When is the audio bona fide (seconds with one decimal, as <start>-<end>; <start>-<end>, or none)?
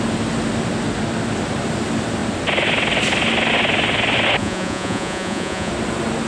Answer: 0.0-4.4; 5.7-6.3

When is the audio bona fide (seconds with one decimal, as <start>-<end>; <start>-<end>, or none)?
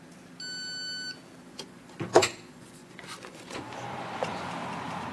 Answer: 0.0-1.4; 4.5-5.1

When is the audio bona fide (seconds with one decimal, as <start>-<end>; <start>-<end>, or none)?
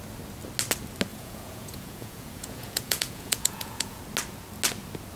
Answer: 0.0-1.1; 4.0-5.2